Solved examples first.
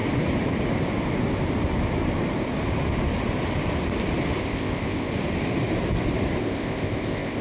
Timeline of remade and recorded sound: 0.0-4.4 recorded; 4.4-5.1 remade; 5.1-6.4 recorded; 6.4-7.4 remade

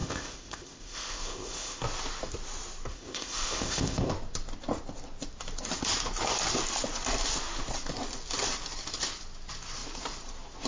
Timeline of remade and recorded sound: 0.0-1.8 remade; 1.8-2.9 recorded; 2.9-4.1 remade; 4.1-10.7 recorded

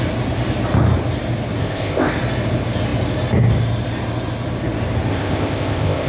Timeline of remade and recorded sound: 0.0-1.6 recorded; 1.6-2.1 remade; 2.1-5.1 recorded; 5.1-6.1 remade

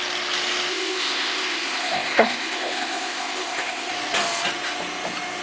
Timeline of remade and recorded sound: 0.0-0.7 recorded; 0.7-3.9 remade; 3.9-5.4 recorded